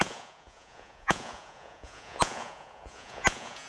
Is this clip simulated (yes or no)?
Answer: yes